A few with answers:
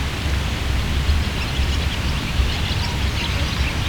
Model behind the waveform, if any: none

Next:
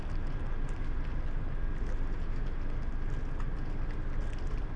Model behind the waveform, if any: none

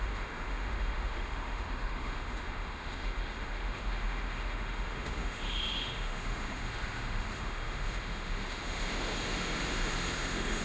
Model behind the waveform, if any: autoencoder, DAC-VAE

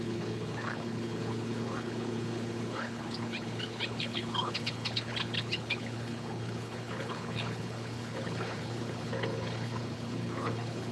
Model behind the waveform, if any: codec, HILCodec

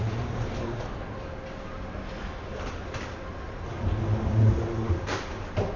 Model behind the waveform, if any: none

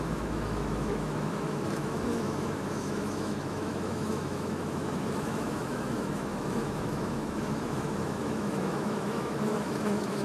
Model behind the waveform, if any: autoencoder, DAC-VAE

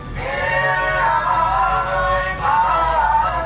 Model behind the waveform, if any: codec, DAC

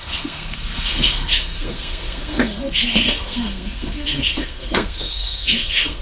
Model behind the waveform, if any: codec, SNAC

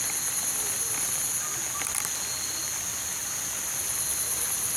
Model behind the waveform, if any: none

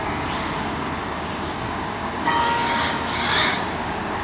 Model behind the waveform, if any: codec, DAC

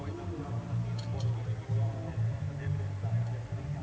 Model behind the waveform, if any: none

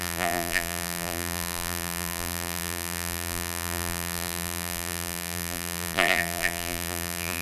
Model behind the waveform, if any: vocoder, BigVGAN v2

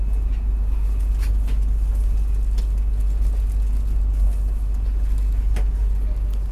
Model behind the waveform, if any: none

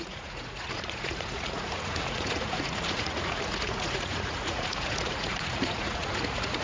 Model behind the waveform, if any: vocoder, Vocos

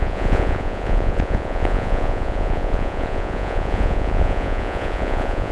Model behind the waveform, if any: vocoder, Vocos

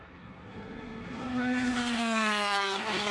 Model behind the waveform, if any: codec, SNAC